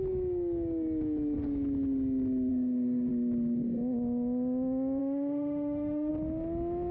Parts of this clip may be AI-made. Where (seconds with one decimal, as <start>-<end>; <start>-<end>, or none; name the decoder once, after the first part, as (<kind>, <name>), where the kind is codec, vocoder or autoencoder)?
2.5-3.1 (autoencoder, DAC-VAE); 5.0-6.1